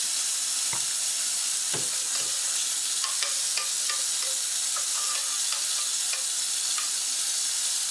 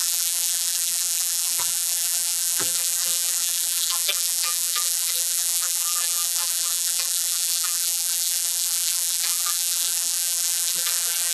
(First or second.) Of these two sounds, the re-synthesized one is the second